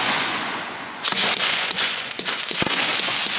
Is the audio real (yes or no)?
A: no